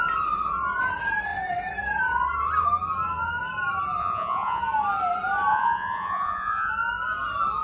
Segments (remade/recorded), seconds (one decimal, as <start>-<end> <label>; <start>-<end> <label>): 0.0-4.0 recorded; 4.0-4.6 remade; 4.6-5.5 recorded; 5.5-6.7 remade; 6.7-7.6 recorded